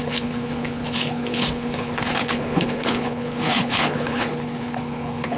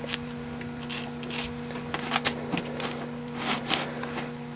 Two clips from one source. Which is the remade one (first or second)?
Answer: first